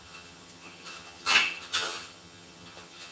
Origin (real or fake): fake